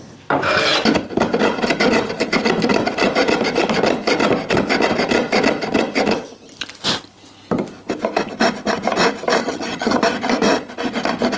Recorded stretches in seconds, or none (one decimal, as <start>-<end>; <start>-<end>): 0.0-9.4; 10.0-11.4